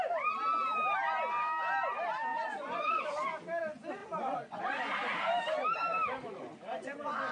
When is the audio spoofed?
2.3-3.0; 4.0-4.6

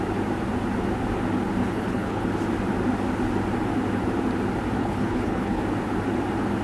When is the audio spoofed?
1.6-2.3; 4.8-5.6

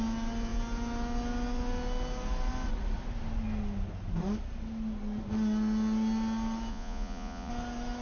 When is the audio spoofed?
6.7-7.5

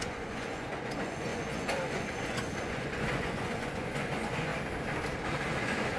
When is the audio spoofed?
0.0-4.5; 5.6-6.0

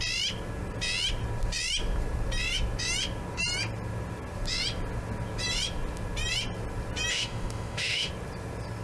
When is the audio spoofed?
7.1-8.1